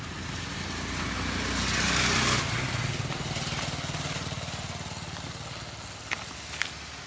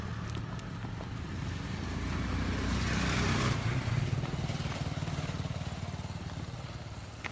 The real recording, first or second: first